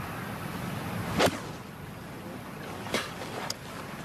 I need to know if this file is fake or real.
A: real